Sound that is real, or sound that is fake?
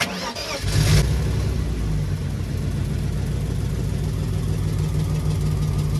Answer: real